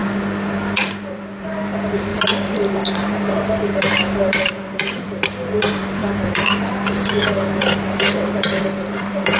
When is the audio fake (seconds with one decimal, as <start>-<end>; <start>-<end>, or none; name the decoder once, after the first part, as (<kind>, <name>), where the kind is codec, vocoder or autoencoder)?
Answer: 0.8-9.4 (vocoder, BigVGAN v2)